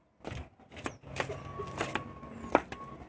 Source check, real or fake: real